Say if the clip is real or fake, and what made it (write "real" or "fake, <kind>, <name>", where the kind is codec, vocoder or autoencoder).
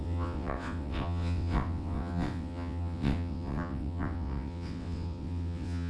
fake, vocoder, WaveNeXt